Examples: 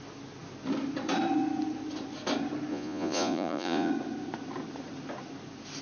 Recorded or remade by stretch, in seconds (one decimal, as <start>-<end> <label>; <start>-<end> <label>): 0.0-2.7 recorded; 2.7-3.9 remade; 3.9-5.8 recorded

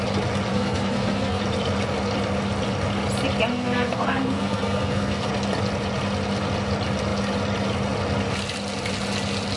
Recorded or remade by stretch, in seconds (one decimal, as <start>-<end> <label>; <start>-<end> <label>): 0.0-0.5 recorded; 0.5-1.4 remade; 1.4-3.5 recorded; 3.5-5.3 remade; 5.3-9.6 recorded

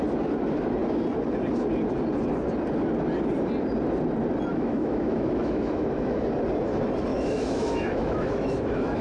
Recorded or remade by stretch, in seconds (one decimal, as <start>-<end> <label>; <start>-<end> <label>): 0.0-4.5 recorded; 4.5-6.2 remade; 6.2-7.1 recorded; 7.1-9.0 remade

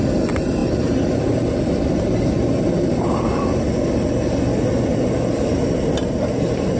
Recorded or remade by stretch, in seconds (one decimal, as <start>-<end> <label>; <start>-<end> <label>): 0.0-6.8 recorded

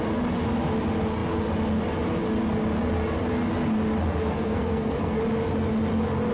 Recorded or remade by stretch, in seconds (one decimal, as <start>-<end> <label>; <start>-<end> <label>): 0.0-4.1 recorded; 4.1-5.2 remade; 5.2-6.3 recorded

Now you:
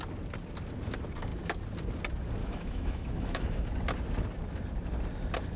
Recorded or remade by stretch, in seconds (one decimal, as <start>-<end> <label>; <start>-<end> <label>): 0.0-2.4 recorded; 2.4-3.7 remade; 3.7-5.6 recorded

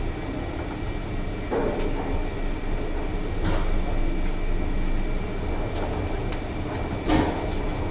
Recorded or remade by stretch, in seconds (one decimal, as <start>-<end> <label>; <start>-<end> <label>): 0.0-7.9 recorded

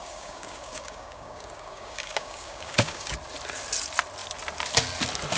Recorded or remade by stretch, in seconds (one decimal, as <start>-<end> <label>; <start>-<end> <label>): 0.0-3.2 remade; 3.2-5.4 recorded